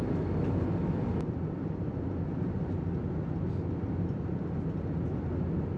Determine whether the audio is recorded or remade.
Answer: recorded